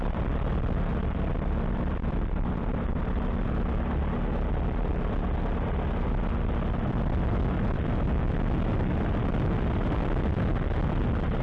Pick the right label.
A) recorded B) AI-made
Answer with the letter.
A